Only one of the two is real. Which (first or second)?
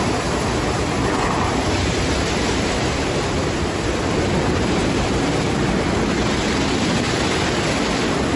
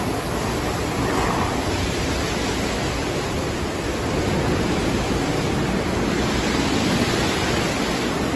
second